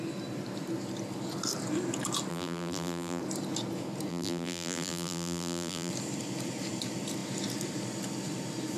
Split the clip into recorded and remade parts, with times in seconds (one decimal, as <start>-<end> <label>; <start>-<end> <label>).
0.0-2.3 recorded; 2.3-3.2 remade; 3.2-4.1 recorded; 4.1-5.9 remade; 5.9-8.8 recorded